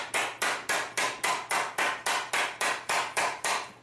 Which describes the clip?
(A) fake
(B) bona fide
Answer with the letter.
B